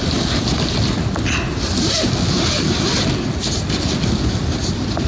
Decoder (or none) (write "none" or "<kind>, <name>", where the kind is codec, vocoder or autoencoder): none